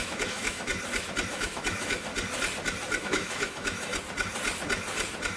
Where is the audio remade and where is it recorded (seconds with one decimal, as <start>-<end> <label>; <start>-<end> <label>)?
0.0-0.7 remade; 0.7-1.3 recorded; 1.3-2.1 remade; 2.1-3.0 recorded; 3.0-3.9 remade; 3.9-5.4 recorded